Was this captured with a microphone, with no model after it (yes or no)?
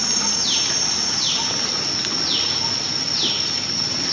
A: yes